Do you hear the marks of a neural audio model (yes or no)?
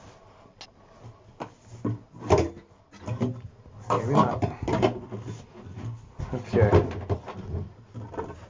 no